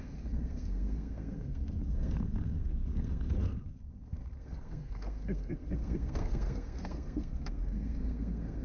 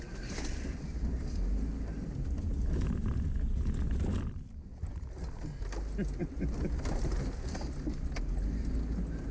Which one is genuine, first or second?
second